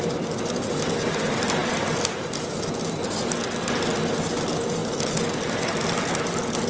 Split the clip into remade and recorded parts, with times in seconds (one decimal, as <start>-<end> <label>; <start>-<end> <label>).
0.0-6.7 recorded